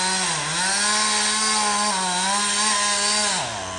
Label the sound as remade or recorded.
recorded